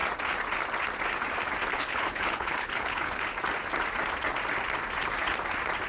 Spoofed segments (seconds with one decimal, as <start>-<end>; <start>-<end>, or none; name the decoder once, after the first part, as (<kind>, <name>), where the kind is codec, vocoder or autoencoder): 1.7-3.2 (codec, HILCodec)